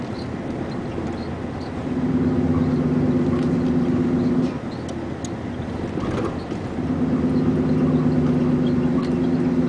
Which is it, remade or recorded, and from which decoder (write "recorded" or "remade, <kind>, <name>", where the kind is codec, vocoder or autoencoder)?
recorded